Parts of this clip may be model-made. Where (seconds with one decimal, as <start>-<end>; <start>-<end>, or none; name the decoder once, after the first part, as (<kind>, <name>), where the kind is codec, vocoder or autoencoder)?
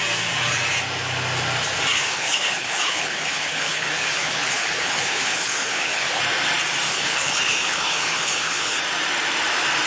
1.9-6.2 (codec, HILCodec); 6.9-8.8